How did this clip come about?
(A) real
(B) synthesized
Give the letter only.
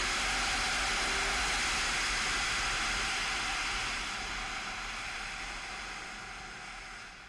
A